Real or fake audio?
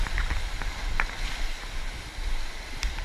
real